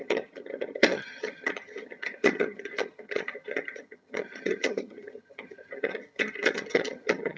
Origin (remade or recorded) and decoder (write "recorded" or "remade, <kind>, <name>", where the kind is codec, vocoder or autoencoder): remade, vocoder, HiFi-GAN